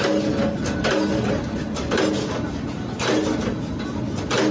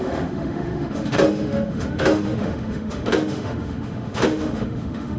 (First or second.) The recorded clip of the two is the first